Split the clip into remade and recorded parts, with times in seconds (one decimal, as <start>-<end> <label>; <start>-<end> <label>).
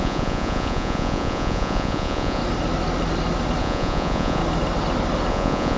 0.0-2.4 remade; 2.4-3.6 recorded; 3.6-4.4 remade; 4.4-5.3 recorded; 5.3-5.8 remade